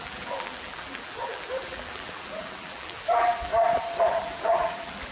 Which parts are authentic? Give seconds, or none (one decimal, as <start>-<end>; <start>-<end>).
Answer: 3.5-4.0